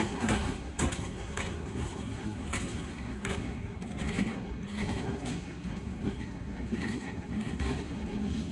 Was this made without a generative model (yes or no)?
no